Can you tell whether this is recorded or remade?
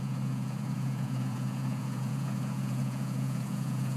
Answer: remade